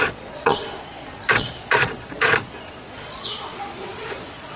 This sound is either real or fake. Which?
fake